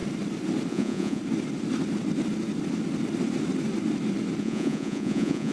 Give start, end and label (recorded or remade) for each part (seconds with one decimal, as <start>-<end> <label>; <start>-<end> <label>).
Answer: 0.0-0.7 recorded; 0.7-1.2 remade; 1.2-4.4 recorded; 4.4-5.5 remade